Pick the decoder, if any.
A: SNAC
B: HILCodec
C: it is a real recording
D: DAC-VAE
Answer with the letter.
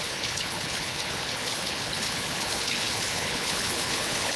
B